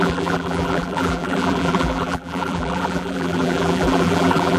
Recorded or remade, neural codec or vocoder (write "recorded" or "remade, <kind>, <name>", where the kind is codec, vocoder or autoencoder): remade, vocoder, BigVGAN v2